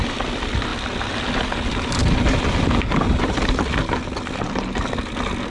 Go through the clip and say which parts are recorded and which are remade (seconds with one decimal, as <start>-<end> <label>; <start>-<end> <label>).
0.0-5.5 recorded